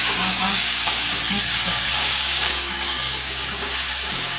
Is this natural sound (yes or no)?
no